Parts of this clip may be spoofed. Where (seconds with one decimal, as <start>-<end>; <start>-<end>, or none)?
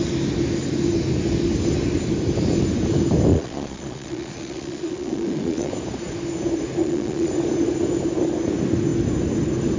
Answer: 3.3-5.7; 6.8-7.3